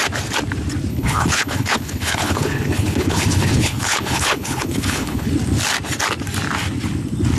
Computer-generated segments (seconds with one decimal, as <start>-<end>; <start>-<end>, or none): 0.9-5.3